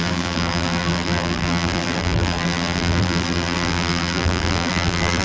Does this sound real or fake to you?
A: fake